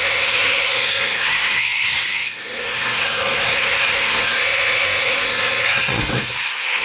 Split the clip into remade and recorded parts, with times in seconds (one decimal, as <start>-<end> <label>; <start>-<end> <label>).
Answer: 0.0-6.8 remade